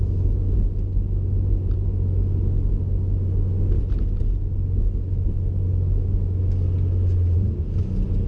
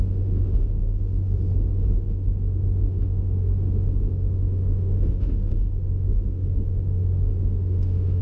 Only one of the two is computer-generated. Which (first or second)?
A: second